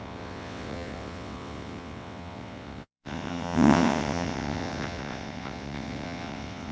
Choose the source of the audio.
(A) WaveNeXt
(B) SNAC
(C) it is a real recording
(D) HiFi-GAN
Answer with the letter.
A